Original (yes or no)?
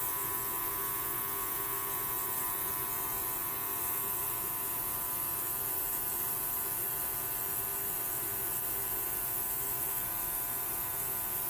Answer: yes